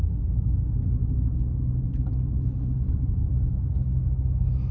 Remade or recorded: recorded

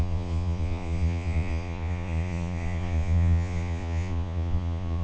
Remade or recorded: remade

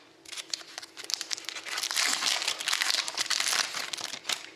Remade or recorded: recorded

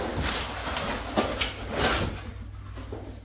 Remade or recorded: recorded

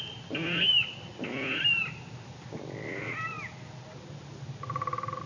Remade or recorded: recorded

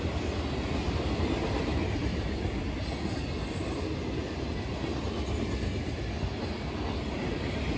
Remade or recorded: recorded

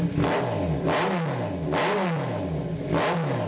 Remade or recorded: recorded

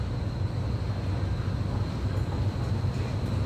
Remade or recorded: recorded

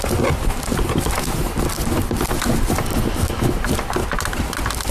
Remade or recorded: recorded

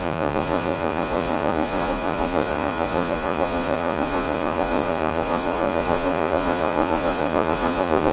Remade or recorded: remade